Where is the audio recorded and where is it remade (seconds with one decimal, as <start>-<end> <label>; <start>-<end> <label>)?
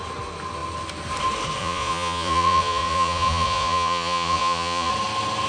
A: 0.0-1.6 recorded; 1.6-4.9 remade; 4.9-5.5 recorded